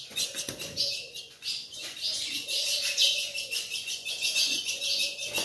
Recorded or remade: remade